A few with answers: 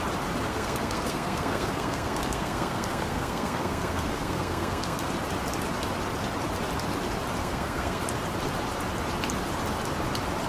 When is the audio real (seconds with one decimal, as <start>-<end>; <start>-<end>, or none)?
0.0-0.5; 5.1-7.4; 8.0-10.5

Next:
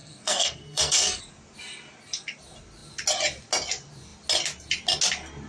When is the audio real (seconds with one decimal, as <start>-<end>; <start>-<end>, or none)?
1.2-5.5

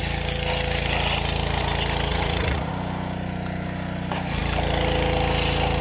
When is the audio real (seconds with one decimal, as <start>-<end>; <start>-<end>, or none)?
0.0-2.1; 2.7-5.8

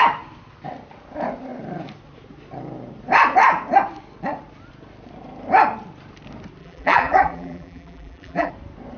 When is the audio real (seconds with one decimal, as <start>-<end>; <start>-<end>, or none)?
0.0-6.6; 8.5-9.0

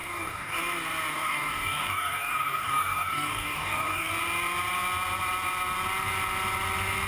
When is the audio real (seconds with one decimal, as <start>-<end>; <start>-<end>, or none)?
0.6-1.1; 4.1-7.1

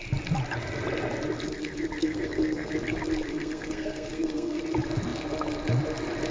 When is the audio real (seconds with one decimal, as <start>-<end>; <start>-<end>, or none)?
0.0-2.0; 2.7-3.3; 4.6-6.3

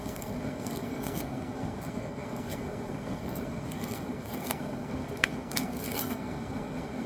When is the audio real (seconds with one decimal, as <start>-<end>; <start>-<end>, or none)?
none